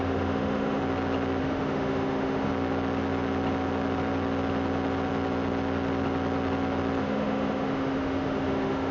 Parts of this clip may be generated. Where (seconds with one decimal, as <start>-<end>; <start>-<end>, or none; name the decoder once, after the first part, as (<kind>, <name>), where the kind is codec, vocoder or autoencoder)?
0.0-0.8 (autoencoder, DAC-VAE); 1.4-2.5; 7.0-8.9